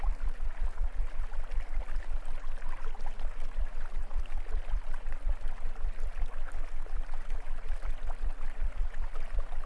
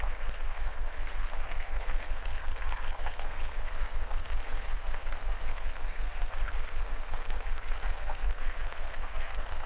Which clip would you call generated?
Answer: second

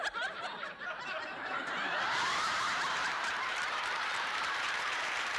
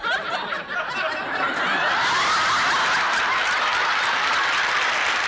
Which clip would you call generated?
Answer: first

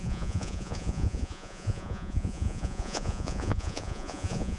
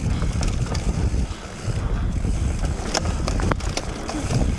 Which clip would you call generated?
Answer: first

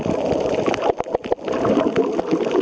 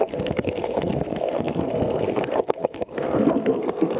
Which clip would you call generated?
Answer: second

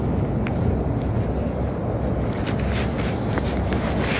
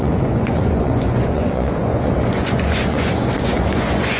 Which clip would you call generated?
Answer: second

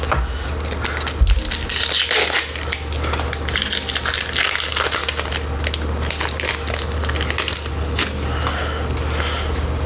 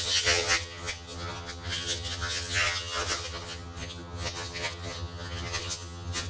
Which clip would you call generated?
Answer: second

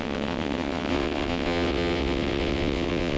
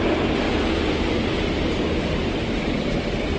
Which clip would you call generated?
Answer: first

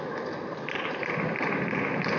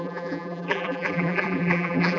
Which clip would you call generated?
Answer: second